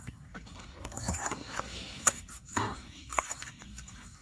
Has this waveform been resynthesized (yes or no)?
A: yes